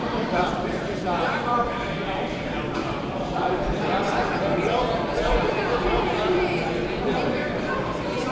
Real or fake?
fake